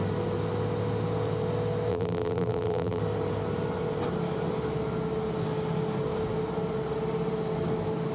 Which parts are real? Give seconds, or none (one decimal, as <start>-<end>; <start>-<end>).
0.0-1.9; 3.0-8.1